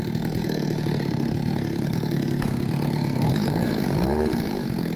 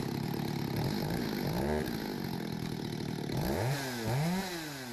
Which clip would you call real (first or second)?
second